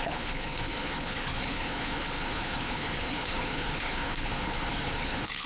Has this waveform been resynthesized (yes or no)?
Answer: yes